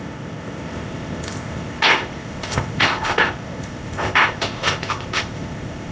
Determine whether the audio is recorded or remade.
remade